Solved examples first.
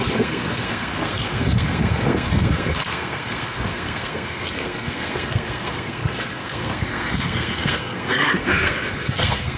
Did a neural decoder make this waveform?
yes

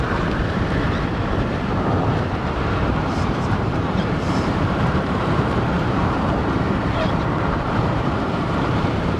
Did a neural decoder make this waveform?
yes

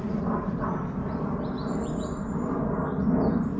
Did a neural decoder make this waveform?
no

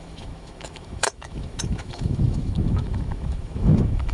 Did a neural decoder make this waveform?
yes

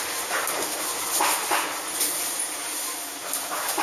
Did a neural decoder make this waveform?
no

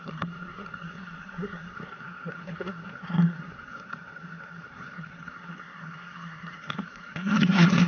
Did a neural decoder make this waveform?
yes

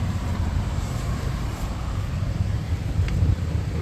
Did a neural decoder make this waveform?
yes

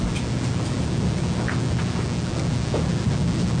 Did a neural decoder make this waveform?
no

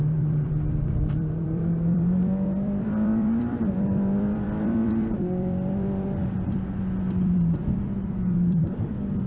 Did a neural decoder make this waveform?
yes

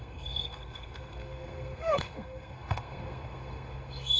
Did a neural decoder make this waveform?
yes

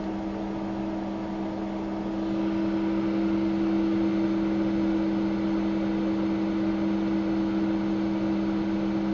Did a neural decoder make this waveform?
no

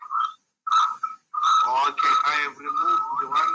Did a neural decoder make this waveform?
no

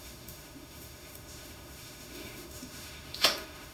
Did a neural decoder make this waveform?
yes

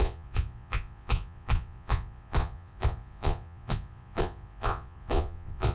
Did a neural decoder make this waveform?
yes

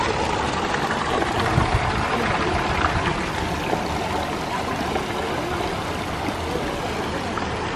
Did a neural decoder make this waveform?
no